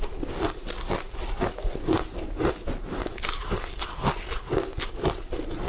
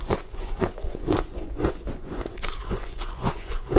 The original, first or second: first